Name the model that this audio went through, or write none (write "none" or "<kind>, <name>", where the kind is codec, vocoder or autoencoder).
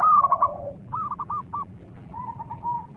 vocoder, BigVGAN v2